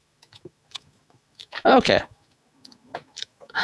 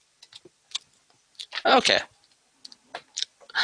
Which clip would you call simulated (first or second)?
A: first